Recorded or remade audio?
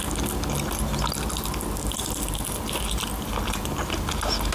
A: recorded